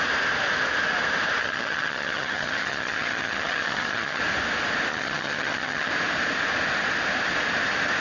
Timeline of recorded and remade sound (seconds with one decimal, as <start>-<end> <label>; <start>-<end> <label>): 0.0-1.4 recorded; 1.4-4.2 remade; 4.2-4.9 recorded; 4.9-5.9 remade; 5.9-8.0 recorded